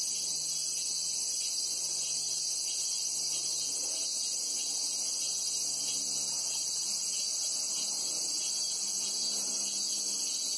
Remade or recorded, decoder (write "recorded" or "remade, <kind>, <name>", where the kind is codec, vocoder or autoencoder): recorded